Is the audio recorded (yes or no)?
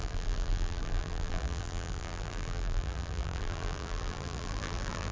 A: no